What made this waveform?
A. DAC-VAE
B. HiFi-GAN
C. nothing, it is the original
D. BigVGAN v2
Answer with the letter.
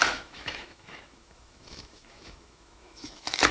A